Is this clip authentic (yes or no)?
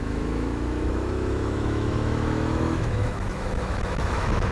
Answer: no